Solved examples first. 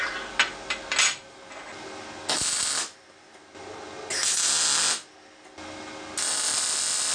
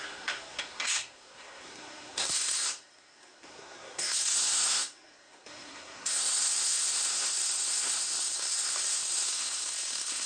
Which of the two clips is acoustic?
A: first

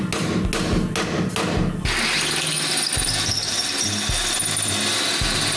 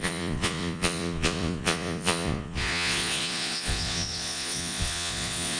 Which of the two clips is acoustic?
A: first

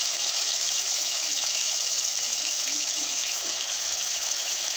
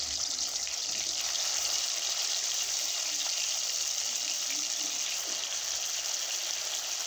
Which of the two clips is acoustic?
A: second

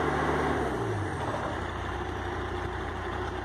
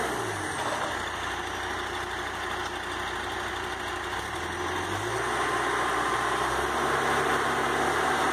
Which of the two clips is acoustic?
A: second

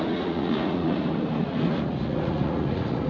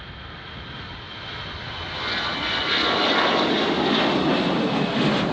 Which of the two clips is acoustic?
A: second